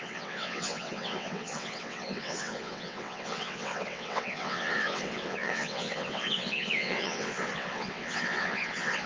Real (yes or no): no